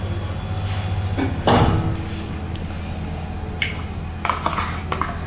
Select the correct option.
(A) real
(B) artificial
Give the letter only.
A